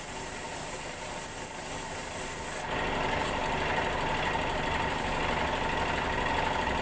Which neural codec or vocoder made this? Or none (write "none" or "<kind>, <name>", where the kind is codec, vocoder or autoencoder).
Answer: none